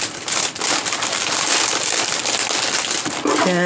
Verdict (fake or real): real